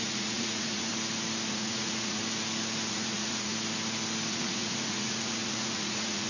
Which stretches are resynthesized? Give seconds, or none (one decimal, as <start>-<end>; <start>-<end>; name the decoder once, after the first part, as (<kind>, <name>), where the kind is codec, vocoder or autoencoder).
0.0-0.9 (vocoder, Vocos); 1.5-2.2; 2.9-3.5; 4.3-6.3